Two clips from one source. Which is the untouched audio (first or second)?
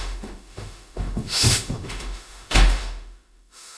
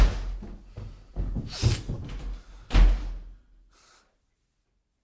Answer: second